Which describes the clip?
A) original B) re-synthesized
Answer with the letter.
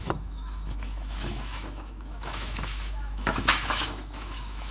B